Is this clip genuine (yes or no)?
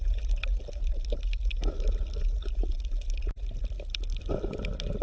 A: yes